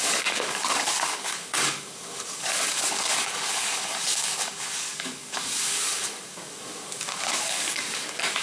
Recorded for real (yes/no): no